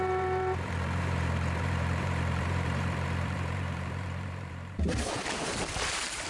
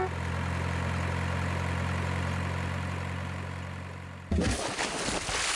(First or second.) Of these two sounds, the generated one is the first